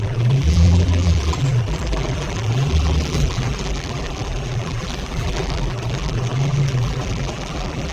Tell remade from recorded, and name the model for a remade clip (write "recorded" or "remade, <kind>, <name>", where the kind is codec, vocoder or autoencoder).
remade, vocoder, BigVGAN v2